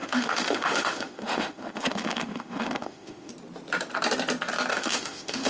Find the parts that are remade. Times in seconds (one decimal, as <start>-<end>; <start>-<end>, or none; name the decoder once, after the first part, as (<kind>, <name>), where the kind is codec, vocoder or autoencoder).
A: 0.0-3.3 (autoencoder, DAC-VAE); 4.7-5.5